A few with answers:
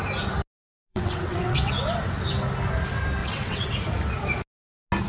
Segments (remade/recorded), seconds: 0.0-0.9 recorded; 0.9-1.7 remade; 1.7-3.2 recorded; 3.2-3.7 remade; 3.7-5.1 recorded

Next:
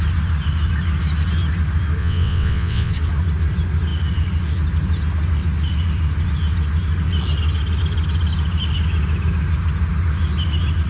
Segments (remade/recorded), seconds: 0.0-2.0 recorded; 2.0-2.9 remade; 2.9-10.9 recorded

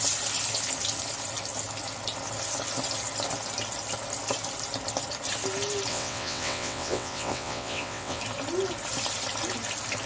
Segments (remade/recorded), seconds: 0.0-5.9 recorded; 5.9-8.2 remade; 8.2-10.1 recorded

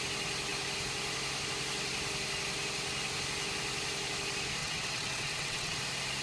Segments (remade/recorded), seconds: 0.0-4.6 recorded; 4.6-5.8 remade; 5.8-6.2 recorded